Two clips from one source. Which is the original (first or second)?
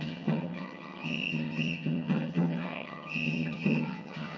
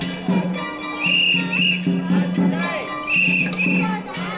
second